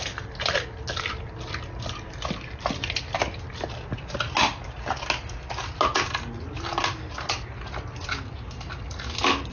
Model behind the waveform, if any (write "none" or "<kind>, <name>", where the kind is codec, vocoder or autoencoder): none